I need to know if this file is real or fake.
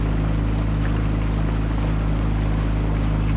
real